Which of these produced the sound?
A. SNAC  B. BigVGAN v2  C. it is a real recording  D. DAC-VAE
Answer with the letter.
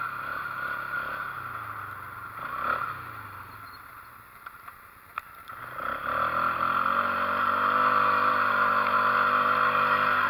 C